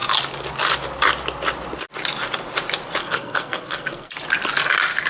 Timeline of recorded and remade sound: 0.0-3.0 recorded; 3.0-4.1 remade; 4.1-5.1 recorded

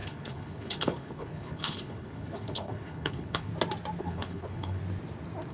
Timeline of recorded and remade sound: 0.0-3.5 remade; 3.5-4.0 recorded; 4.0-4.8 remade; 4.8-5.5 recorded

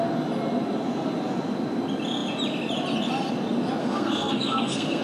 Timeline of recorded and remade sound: 0.0-3.8 recorded; 3.8-5.0 remade

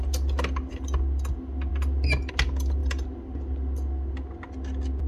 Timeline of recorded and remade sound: 0.0-5.1 recorded